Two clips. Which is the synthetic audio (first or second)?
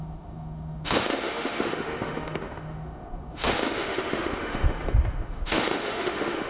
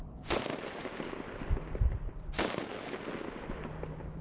first